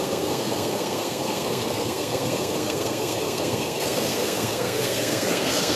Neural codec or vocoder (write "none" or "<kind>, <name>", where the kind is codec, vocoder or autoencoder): codec, SNAC